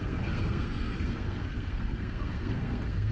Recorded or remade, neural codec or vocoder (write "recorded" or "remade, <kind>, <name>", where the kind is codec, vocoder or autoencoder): remade, codec, SNAC